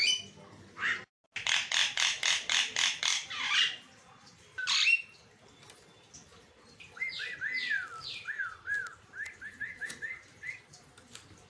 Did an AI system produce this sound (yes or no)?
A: no